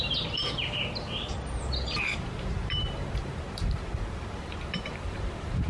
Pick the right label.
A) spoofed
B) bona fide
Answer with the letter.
A